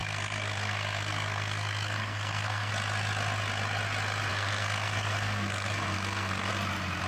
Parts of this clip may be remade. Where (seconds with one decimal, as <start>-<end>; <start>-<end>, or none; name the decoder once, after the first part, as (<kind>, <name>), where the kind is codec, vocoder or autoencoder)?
0.0-2.7 (codec, SNAC); 4.3-6.5